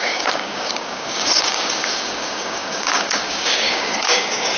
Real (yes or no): no